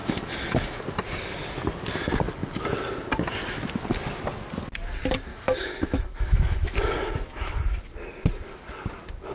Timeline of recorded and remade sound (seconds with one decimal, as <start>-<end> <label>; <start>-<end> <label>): 0.0-0.8 remade; 0.8-5.3 recorded; 5.3-7.5 remade; 7.5-9.3 recorded